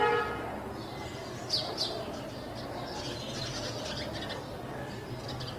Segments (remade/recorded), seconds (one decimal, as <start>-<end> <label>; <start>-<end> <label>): 0.0-5.6 recorded